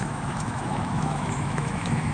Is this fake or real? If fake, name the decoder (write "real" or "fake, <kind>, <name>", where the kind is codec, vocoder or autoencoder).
fake, autoencoder, DAC-VAE